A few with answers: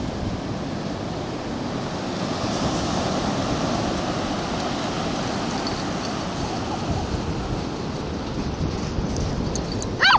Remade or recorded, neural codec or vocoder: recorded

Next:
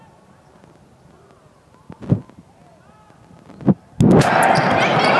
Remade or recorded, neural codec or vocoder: recorded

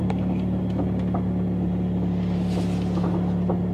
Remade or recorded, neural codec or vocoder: recorded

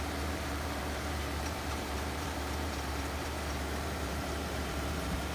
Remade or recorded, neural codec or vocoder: remade, vocoder, BigVGAN v2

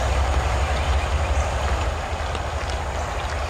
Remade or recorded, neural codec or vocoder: recorded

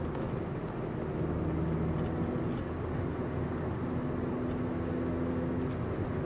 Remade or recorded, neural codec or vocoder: recorded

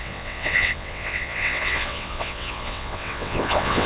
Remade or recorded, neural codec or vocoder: remade, vocoder, WaveNeXt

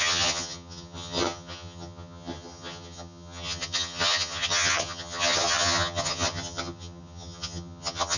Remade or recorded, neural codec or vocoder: remade, vocoder, HiFi-GAN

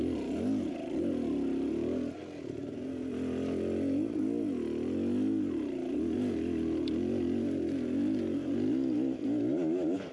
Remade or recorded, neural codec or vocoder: recorded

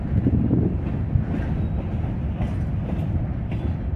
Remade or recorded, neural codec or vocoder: recorded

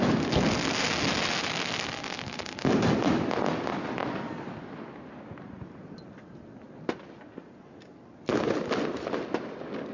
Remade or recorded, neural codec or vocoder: recorded